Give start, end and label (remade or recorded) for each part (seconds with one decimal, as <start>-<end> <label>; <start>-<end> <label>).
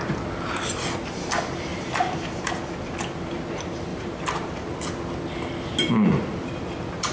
0.0-1.7 recorded; 1.7-2.5 remade; 2.5-3.9 recorded; 3.9-4.5 remade; 4.5-7.1 recorded